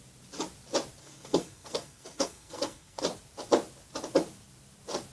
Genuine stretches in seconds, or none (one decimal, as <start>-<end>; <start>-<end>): 0.0-1.0; 3.0-5.1